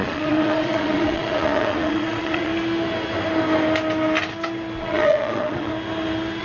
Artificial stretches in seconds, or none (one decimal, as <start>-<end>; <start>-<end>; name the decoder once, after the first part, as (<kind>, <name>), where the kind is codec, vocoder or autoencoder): 0.0-2.5 (vocoder, Vocos); 4.8-5.7